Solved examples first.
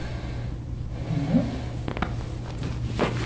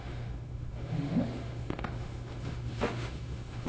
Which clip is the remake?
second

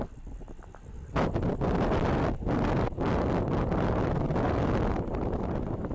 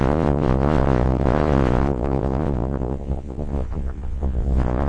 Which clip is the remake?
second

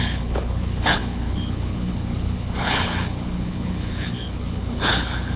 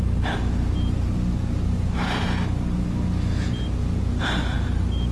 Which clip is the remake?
first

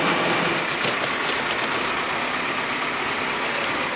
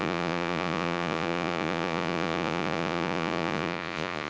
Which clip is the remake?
second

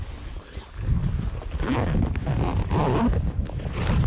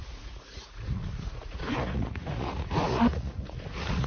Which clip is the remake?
second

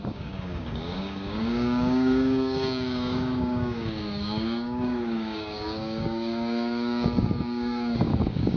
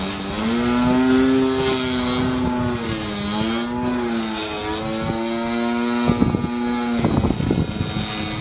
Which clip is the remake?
first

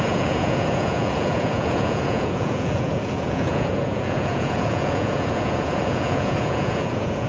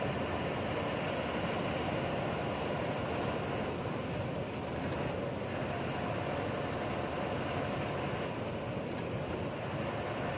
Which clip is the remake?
first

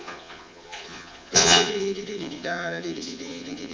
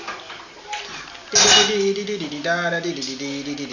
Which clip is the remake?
first